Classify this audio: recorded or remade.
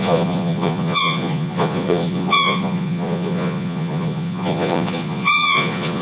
remade